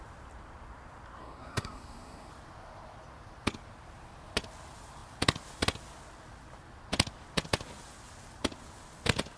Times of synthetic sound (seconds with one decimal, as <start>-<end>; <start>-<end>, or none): 1.2-2.3